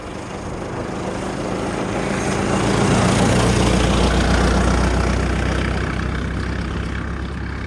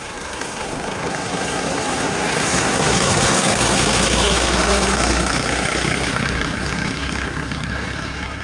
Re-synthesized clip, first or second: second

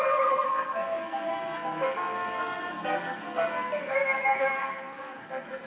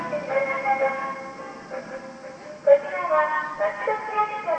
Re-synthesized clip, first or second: first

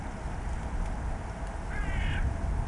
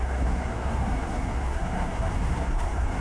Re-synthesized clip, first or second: second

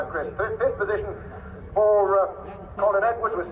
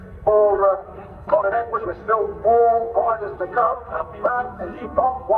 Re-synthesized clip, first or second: second